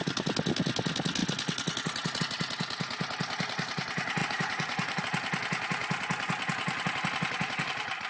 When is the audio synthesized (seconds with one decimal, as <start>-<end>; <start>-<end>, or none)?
4.2-5.0